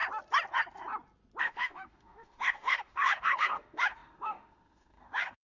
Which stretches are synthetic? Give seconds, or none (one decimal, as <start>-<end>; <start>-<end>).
1.4-5.4